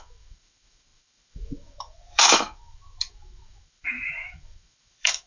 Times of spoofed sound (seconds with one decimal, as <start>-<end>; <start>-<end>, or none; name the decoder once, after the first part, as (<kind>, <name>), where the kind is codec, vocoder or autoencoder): 0.0-5.3 (autoencoder, DAC-VAE)